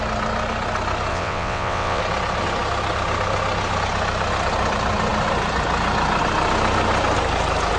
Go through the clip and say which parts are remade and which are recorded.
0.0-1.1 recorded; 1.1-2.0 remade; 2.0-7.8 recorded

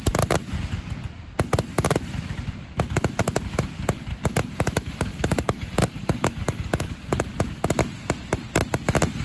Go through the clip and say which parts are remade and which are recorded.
0.0-5.1 recorded; 5.1-6.9 remade; 6.9-9.2 recorded

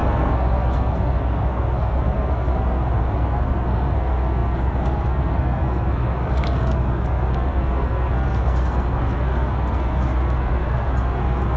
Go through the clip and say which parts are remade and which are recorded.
0.0-11.6 remade